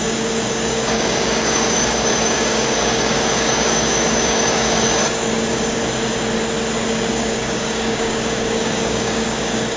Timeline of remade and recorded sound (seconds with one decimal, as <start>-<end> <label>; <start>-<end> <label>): 0.0-5.8 remade; 5.8-7.1 recorded; 7.1-9.8 remade